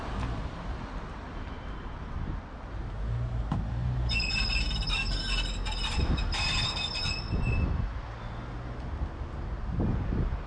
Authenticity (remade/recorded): recorded